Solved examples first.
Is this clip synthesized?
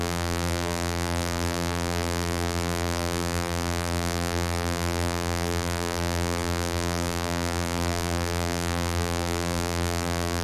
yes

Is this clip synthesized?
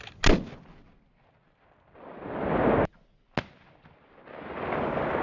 no